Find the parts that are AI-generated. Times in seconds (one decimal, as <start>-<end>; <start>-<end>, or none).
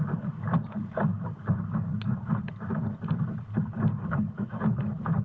1.1-2.8